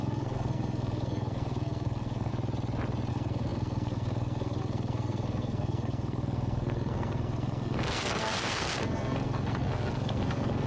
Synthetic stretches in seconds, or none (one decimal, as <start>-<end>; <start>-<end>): 0.0-2.3; 3.1-10.7